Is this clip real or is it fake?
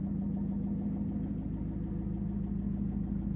real